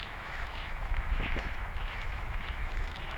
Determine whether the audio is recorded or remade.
remade